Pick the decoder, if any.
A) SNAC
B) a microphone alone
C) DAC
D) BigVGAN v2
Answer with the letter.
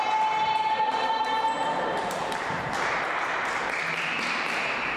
D